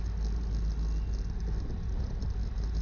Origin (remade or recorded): recorded